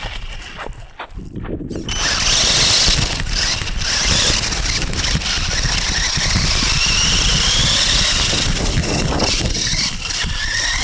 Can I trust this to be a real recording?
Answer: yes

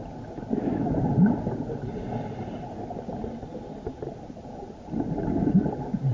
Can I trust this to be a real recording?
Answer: yes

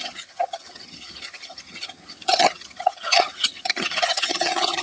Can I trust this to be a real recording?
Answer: no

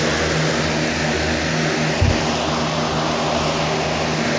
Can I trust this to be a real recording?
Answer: yes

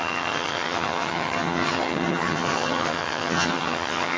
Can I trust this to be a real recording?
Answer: no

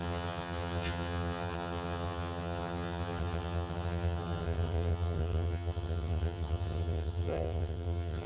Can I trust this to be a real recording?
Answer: no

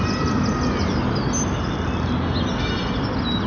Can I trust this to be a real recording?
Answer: yes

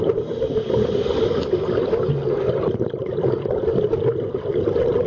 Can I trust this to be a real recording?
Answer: yes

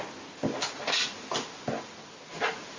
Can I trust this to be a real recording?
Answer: yes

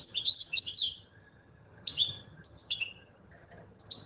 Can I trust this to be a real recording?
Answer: no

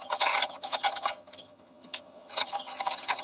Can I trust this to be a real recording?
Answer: no